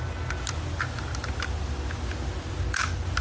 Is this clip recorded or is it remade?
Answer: recorded